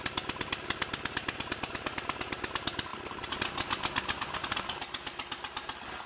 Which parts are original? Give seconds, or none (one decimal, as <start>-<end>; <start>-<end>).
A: 0.0-6.1